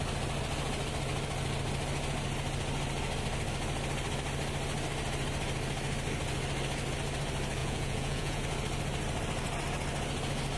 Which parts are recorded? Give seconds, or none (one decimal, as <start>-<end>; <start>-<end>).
0.0-7.6; 8.4-10.6

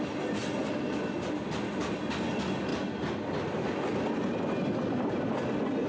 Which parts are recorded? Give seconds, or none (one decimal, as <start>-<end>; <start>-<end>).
0.0-5.9

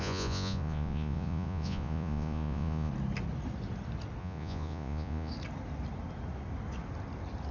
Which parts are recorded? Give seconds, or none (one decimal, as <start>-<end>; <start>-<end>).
2.9-4.2; 5.3-7.5

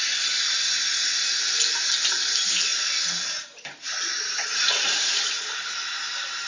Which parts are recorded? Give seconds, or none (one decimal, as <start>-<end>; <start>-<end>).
0.0-2.7; 5.2-6.5

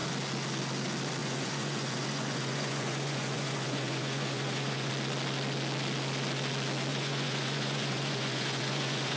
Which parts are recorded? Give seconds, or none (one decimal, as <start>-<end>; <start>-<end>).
0.0-1.2; 4.9-6.9

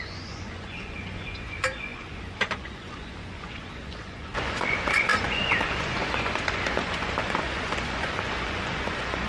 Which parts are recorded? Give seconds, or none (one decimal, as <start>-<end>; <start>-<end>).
none